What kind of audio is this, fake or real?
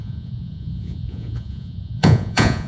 fake